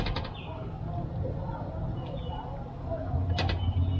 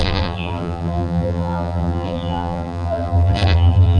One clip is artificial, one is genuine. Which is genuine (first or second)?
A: first